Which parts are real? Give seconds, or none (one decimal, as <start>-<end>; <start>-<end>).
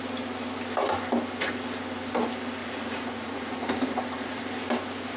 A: 0.0-2.6; 4.4-5.2